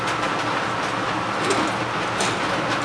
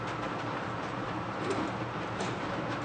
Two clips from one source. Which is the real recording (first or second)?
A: first